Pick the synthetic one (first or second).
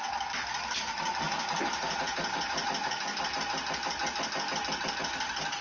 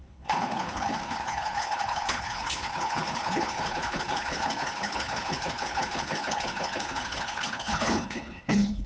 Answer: second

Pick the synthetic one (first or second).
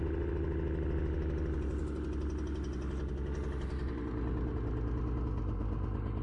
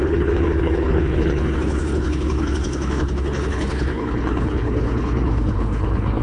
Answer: second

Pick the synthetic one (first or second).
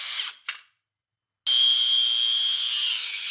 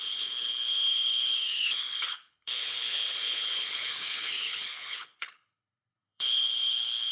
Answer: second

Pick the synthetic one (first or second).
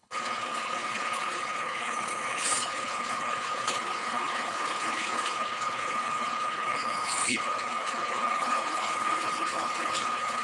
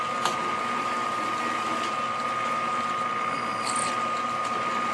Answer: first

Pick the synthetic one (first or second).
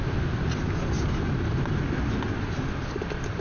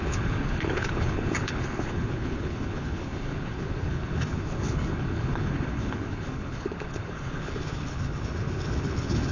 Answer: second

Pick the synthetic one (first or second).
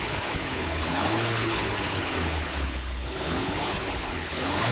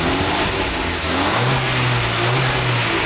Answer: first